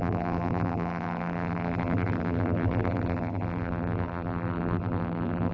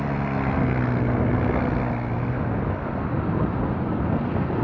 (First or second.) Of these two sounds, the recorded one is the second